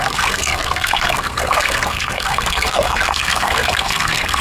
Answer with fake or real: fake